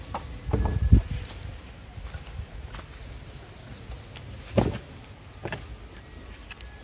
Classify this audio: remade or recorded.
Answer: recorded